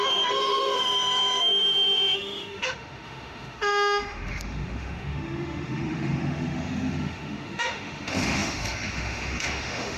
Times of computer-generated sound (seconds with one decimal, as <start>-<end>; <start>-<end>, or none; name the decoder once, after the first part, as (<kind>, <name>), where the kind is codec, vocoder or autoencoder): 0.0-10.0 (autoencoder, DAC-VAE)